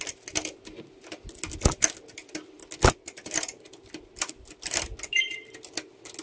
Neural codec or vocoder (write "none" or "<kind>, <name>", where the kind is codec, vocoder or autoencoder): none